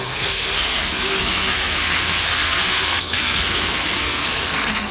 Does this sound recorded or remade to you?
remade